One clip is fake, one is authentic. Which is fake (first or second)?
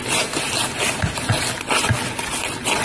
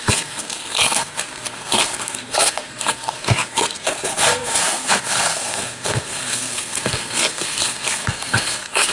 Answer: second